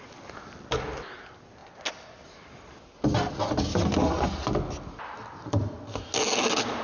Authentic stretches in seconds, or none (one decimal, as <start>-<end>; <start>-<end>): 0.0-6.8